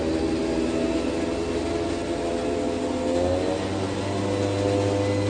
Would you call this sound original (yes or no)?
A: yes